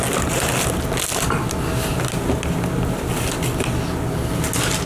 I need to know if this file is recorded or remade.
recorded